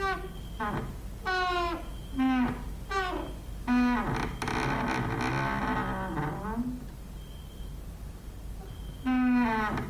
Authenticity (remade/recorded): recorded